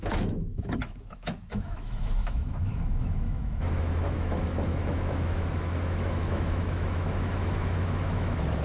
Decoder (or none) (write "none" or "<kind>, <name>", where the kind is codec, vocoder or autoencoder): autoencoder, DAC-VAE